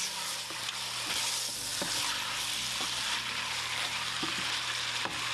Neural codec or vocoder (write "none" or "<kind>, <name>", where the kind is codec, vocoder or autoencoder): none